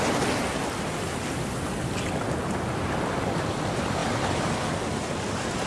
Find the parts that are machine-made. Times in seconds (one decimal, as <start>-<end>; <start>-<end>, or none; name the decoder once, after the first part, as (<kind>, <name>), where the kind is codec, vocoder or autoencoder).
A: 4.0-4.5 (vocoder, BigVGAN v2)